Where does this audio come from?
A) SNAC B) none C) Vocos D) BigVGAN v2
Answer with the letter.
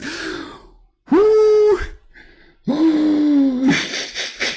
B